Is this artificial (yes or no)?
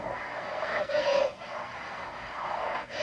yes